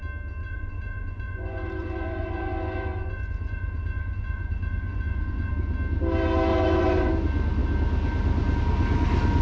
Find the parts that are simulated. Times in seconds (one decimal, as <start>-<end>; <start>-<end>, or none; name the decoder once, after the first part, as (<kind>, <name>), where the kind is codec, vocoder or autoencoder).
0.4-5.5 (vocoder, Vocos); 6.5-7.1